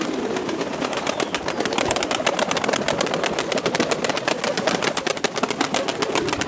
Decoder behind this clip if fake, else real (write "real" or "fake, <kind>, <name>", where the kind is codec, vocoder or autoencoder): real